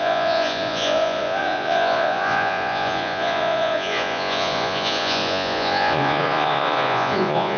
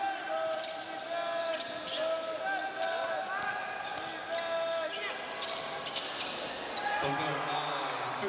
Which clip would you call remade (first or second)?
first